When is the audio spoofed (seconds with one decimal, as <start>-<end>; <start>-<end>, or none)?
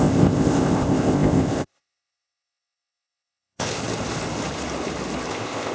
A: 0.0-3.8; 5.3-5.7